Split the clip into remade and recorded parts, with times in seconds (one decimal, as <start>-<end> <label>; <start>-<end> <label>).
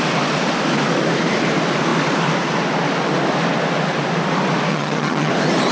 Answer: 0.0-4.7 recorded; 4.7-5.3 remade; 5.3-5.7 recorded